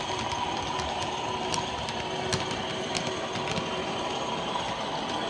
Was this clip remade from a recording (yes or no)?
no